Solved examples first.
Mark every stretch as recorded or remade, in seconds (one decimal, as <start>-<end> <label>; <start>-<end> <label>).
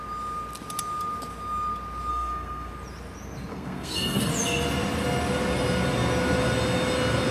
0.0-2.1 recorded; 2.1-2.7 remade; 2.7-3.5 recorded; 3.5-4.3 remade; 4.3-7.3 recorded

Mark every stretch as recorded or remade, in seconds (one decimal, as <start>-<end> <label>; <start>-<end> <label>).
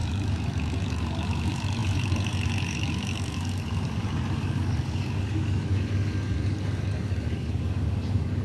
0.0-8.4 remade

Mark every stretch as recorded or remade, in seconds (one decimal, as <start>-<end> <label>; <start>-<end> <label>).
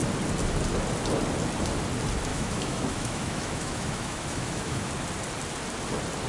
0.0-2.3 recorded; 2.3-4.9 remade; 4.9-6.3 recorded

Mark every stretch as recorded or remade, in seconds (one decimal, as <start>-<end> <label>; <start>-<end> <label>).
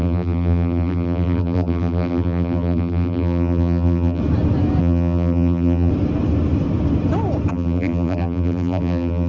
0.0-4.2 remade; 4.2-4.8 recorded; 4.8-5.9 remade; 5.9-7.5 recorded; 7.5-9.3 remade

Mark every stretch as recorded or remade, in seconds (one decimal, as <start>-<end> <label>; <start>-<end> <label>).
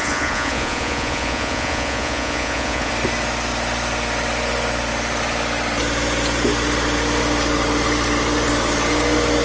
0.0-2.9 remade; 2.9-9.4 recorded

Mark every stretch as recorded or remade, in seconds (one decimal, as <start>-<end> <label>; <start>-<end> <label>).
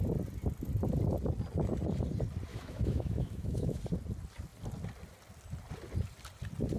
0.0-2.5 recorded; 2.5-3.8 remade; 3.8-6.8 recorded